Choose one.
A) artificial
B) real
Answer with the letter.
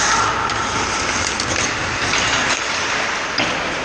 B